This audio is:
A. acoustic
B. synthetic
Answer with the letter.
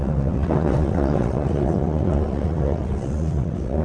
B